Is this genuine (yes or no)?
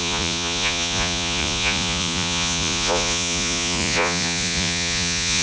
no